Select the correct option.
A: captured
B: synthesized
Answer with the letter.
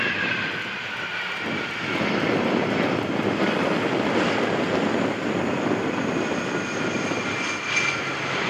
A